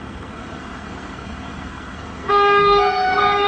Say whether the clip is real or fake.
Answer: fake